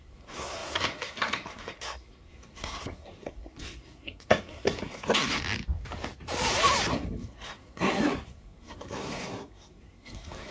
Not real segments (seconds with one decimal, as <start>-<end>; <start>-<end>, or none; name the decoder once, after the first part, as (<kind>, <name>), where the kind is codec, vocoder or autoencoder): 0.0-5.4 (codec, SNAC); 6.9-10.5